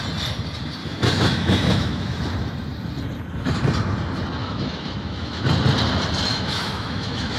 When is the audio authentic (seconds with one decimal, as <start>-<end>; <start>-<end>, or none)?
0.0-0.8; 2.2-4.4; 5.4-6.3